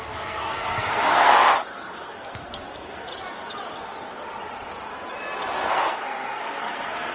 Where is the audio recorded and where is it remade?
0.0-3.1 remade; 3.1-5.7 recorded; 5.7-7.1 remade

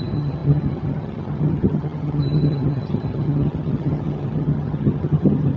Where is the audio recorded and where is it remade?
0.0-5.6 remade

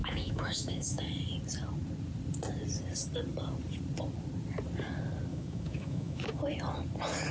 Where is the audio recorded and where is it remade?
0.0-1.0 remade; 1.0-5.3 recorded; 5.3-6.4 remade; 6.4-7.3 recorded